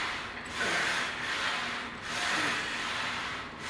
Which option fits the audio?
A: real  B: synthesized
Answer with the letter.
A